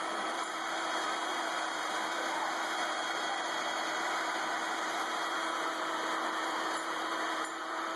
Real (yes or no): no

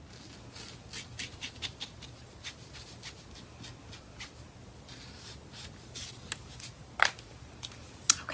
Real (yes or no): yes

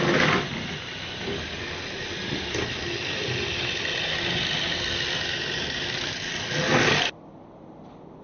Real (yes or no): yes